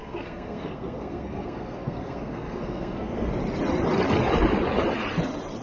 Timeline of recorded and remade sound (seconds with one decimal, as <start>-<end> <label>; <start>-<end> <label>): 0.0-3.3 remade; 3.3-5.6 recorded